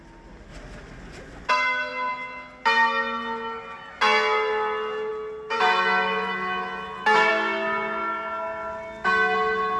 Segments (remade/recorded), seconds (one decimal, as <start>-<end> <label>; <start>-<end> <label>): 0.0-9.8 recorded

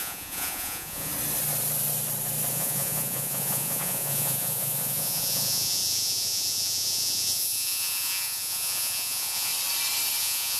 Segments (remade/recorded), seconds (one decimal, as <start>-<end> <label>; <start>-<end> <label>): 0.0-1.1 remade; 1.1-2.5 recorded; 2.5-9.5 remade; 9.5-10.2 recorded; 10.2-10.6 remade

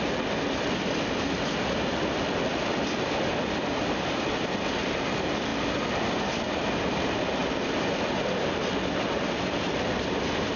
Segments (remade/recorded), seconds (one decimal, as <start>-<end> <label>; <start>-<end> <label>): 0.0-5.5 recorded; 5.5-6.1 remade; 6.1-7.4 recorded; 7.4-8.0 remade; 8.0-10.6 recorded

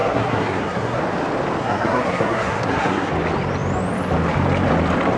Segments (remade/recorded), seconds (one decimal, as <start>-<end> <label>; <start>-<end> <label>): 0.0-1.0 remade; 1.0-1.6 recorded; 1.6-3.1 remade; 3.1-5.2 recorded